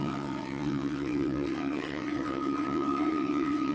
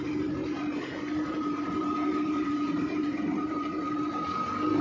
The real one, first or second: second